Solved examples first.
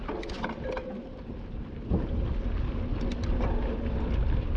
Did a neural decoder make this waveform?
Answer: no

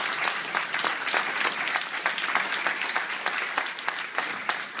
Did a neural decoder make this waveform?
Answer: no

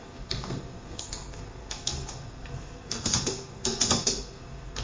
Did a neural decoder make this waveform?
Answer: yes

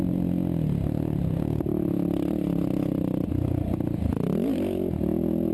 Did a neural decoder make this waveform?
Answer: no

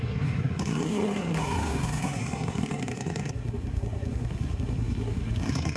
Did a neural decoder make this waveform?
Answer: yes